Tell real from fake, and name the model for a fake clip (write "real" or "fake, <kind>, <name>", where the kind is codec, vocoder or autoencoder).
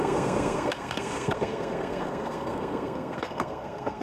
fake, codec, SNAC